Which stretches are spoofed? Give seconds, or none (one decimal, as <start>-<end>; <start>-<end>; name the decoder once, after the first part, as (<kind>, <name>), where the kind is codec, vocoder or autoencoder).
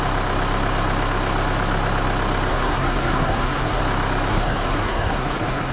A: 2.5-3.8 (codec, SNAC); 4.3-5.7